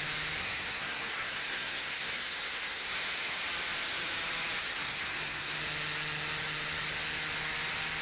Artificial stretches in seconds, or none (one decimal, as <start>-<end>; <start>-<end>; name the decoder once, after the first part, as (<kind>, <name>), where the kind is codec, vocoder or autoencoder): 0.4-2.9 (codec, SNAC); 4.6-5.6